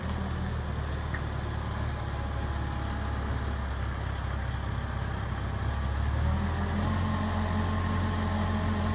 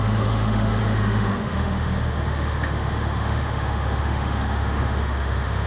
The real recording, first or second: first